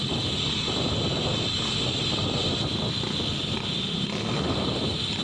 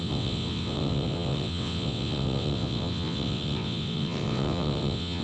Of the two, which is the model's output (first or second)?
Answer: second